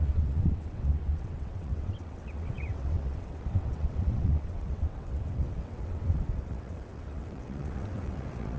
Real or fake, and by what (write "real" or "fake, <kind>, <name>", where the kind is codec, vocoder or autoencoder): fake, vocoder, WaveNeXt